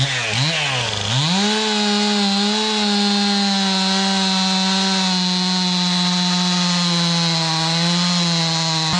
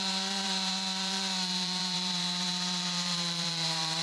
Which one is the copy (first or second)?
second